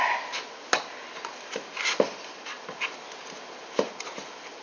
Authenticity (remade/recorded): recorded